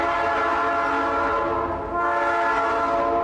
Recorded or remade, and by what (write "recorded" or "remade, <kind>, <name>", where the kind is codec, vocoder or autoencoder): recorded